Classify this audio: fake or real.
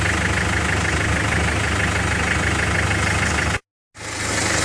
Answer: real